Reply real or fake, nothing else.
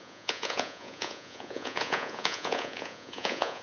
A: fake